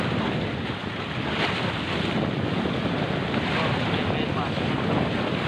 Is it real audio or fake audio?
real